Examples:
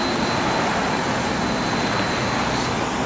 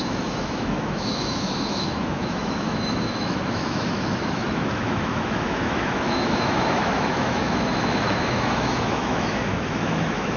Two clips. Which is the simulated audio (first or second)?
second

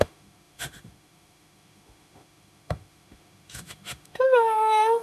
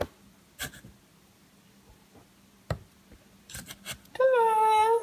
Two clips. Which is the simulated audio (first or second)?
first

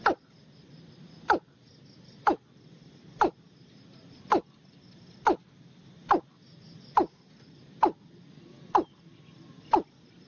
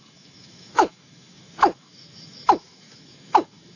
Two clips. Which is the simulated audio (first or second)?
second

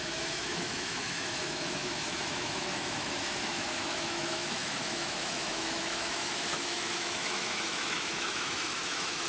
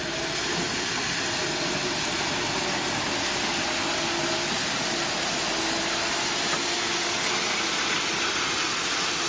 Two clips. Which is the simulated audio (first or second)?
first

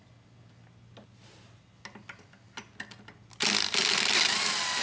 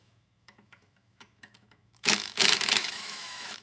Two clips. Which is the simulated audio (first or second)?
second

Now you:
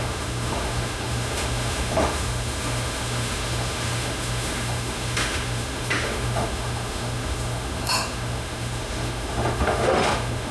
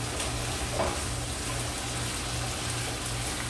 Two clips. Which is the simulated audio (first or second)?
first